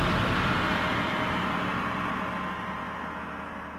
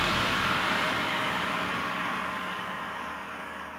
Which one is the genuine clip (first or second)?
first